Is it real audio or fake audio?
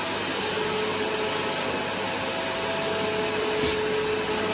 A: real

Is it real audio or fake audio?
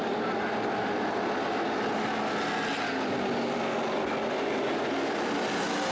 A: real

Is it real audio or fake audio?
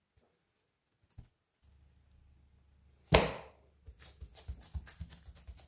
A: real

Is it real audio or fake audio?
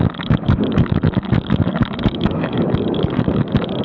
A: fake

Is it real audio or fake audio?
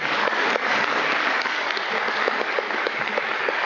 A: fake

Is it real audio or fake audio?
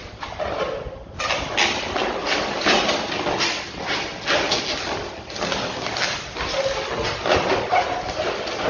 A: real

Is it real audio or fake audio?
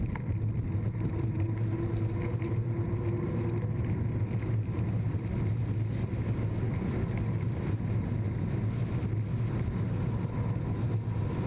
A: real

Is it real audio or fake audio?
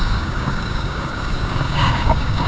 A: fake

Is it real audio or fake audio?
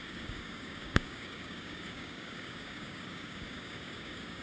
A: fake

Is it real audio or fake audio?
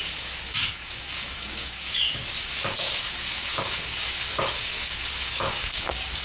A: fake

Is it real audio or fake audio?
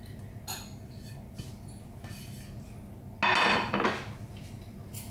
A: real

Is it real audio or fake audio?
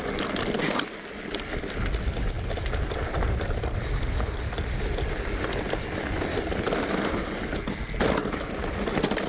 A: real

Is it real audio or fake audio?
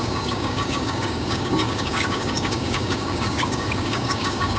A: fake